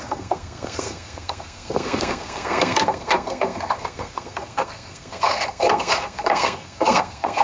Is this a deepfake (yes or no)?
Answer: yes